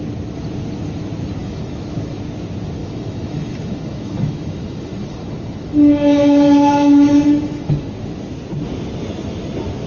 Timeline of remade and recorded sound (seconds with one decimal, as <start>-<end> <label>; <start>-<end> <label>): 0.0-1.4 recorded; 1.4-2.2 remade; 2.2-2.8 recorded; 2.8-7.7 remade; 7.7-9.9 recorded